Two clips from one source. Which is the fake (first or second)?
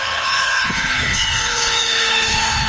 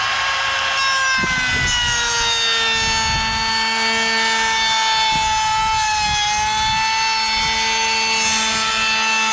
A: first